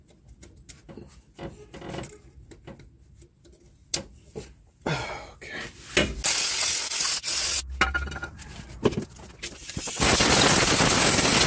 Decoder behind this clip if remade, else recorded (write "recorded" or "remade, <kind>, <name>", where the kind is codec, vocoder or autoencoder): recorded